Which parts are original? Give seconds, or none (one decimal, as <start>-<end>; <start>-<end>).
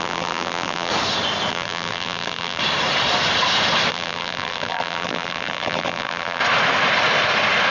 0.9-1.5; 2.6-3.9; 6.4-7.7